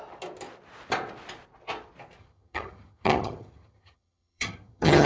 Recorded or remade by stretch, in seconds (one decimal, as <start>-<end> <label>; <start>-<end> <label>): 0.0-2.2 recorded; 2.2-5.1 remade